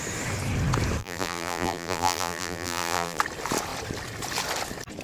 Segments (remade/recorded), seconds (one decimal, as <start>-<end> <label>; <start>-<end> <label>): 0.0-1.0 recorded; 1.0-3.2 remade; 3.2-5.0 recorded